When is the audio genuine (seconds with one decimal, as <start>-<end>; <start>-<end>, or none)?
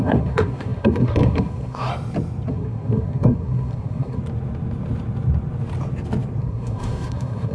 1.9-2.5; 4.2-6.4